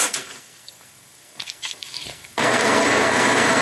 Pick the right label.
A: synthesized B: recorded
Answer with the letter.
A